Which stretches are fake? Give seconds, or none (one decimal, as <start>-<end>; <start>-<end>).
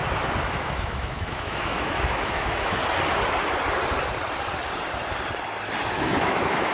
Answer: 0.5-2.8; 5.9-6.7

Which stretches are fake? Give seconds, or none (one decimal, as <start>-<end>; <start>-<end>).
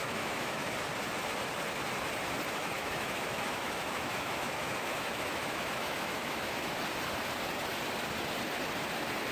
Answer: 0.0-0.7; 2.6-6.8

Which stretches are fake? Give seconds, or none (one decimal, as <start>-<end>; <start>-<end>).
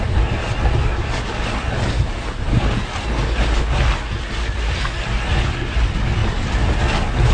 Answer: none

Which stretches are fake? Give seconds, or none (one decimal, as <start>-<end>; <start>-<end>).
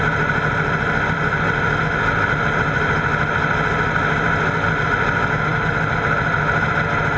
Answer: none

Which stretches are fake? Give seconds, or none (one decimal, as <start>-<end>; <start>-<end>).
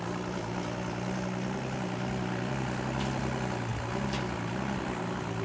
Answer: none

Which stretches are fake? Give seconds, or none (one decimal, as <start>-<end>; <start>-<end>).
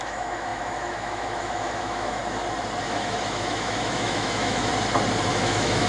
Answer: 0.0-2.2; 2.8-4.7; 5.3-5.9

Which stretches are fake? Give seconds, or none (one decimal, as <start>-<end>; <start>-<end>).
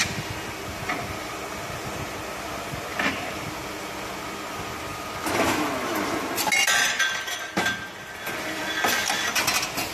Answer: none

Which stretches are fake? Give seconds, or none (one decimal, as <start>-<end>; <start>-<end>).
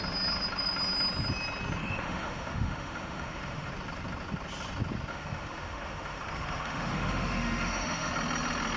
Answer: 1.8-3.7; 5.1-8.1